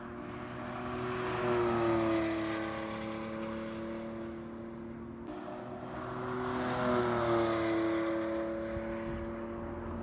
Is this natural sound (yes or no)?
yes